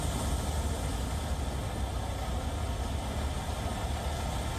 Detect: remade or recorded recorded